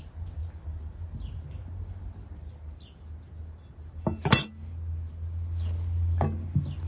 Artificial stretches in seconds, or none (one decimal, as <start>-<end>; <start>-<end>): none